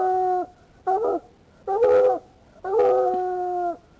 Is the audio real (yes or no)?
yes